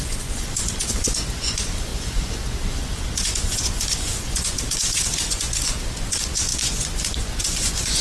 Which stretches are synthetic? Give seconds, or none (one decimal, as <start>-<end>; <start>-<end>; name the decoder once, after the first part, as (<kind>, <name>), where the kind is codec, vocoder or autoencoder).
0.0-8.0 (vocoder, Vocos)